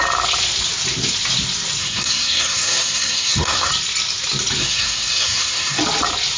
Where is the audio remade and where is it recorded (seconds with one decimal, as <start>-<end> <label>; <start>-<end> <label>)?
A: 0.0-1.8 recorded; 1.8-3.7 remade; 3.7-4.6 recorded; 4.6-5.8 remade; 5.8-6.4 recorded